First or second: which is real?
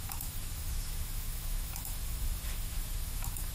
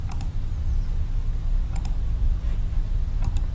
second